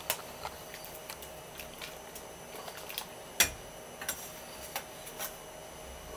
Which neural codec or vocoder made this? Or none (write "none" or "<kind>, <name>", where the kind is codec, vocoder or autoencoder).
none